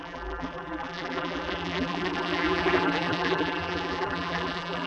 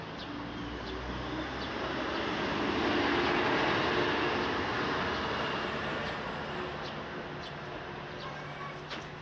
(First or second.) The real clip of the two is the second